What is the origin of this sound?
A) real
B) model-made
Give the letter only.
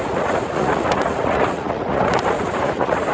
B